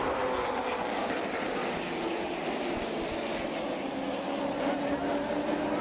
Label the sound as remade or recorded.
recorded